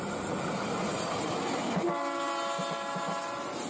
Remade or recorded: recorded